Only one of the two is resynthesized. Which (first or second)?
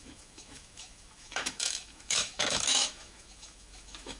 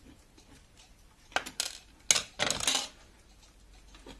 first